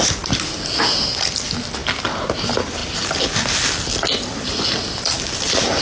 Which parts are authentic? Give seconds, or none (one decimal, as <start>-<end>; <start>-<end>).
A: 0.0-5.8